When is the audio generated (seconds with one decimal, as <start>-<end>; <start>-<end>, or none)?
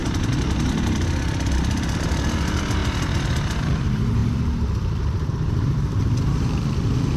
1.5-2.8; 3.6-4.2; 5.3-7.2